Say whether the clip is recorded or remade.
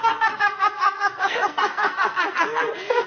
remade